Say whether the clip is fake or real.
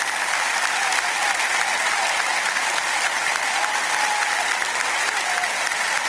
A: real